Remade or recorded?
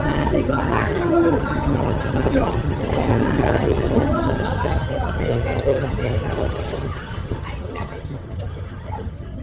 remade